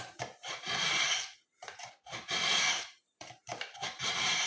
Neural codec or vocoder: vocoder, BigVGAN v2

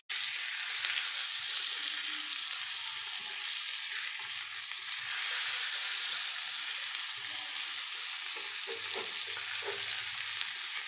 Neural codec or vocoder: none